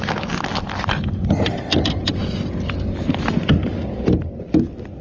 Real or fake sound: real